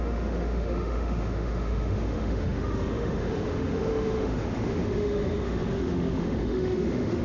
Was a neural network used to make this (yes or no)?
yes